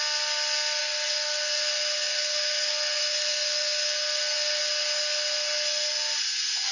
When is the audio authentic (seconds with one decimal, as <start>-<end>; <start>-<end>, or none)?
0.0-0.8; 4.6-6.7